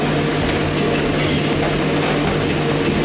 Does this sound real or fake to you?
real